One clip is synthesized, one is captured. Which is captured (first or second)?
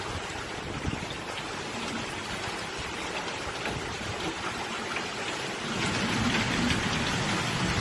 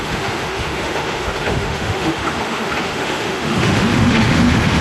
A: first